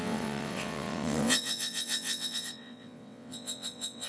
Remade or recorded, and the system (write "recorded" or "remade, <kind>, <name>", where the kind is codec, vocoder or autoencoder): remade, vocoder, WaveNeXt